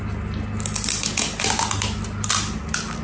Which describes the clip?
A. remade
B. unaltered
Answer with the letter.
B